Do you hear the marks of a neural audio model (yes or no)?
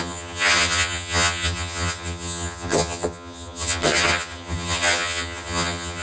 yes